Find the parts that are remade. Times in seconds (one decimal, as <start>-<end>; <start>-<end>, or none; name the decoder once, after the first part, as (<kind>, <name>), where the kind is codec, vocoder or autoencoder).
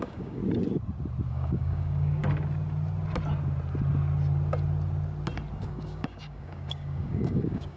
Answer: 0.0-0.4 (codec, DAC); 1.3-2.2; 5.6-7.8